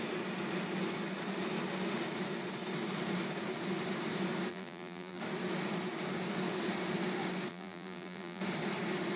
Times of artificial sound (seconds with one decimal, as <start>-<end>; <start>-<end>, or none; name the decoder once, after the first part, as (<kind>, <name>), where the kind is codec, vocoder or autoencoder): 4.5-5.2 (vocoder, BigVGAN v2); 7.5-8.4